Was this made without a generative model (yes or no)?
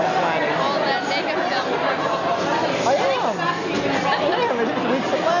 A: yes